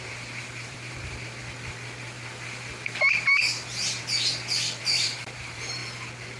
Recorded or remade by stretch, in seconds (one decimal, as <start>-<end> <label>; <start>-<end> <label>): 0.0-1.4 remade; 1.4-4.8 recorded; 4.8-5.8 remade; 5.8-6.4 recorded